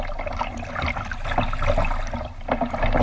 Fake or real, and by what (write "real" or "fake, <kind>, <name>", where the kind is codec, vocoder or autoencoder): real